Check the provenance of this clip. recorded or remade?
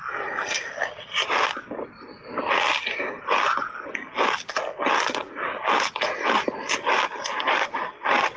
recorded